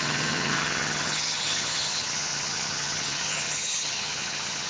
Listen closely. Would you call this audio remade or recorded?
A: remade